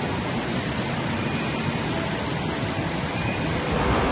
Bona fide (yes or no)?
yes